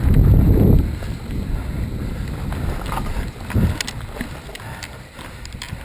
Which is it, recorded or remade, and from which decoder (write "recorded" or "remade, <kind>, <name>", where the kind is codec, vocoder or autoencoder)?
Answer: recorded